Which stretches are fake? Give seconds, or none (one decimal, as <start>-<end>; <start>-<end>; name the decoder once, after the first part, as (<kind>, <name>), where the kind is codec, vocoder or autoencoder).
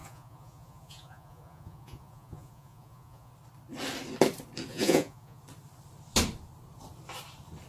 0.0-3.3 (vocoder, Vocos); 4.7-5.4